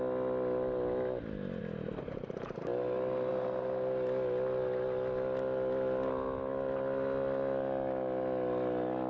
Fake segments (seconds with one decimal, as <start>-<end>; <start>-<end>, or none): none